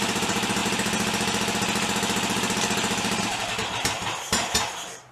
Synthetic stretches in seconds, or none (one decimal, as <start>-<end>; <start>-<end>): 0.0-0.6; 3.2-5.1